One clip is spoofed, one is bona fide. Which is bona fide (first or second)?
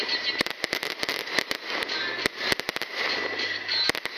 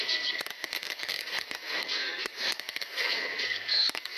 first